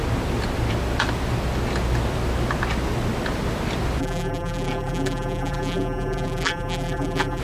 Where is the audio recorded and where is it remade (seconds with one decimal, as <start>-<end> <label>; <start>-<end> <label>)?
0.0-4.0 recorded; 4.0-7.4 remade

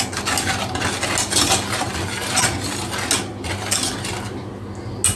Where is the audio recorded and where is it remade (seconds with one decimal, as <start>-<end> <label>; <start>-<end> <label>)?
0.0-5.2 recorded

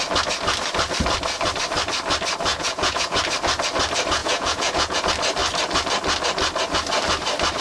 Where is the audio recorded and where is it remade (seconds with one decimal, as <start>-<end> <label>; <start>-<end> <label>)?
0.0-2.5 recorded; 2.5-3.2 remade; 3.2-4.2 recorded; 4.2-5.0 remade; 5.0-7.6 recorded

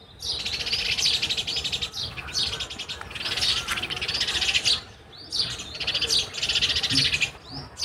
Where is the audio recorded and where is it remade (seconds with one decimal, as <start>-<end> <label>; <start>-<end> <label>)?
0.0-7.8 recorded

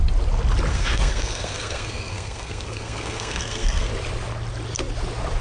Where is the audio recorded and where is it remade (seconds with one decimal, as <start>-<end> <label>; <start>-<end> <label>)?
0.0-0.7 recorded; 0.7-3.9 remade; 3.9-5.4 recorded

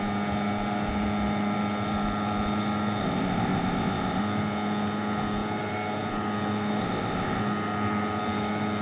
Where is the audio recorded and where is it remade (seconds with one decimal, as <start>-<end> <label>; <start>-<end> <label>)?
0.0-3.0 recorded; 3.0-4.2 remade; 4.2-6.8 recorded; 6.8-7.4 remade; 7.4-8.8 recorded